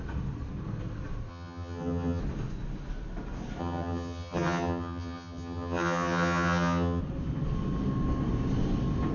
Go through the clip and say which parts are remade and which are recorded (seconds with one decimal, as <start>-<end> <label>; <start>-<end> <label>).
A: 0.0-1.3 recorded; 1.3-2.2 remade; 2.2-3.6 recorded; 3.6-7.0 remade; 7.0-9.1 recorded